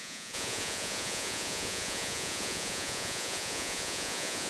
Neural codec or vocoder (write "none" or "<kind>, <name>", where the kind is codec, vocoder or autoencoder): vocoder, Vocos